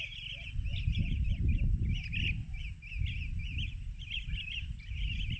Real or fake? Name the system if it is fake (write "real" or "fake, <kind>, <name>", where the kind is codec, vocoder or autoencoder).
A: real